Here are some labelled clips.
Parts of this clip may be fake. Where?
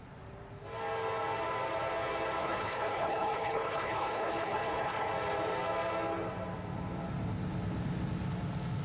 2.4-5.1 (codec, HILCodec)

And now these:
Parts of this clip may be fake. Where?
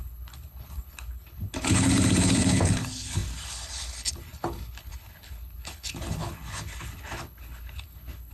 0.0-8.3 (codec, HILCodec)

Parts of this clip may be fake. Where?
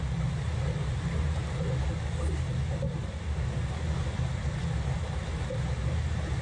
none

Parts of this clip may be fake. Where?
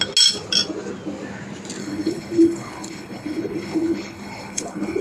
1.8-5.0 (codec, HILCodec)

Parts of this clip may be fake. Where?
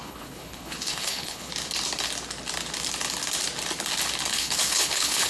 0.0-1.5 (codec, HILCodec); 4.3-5.3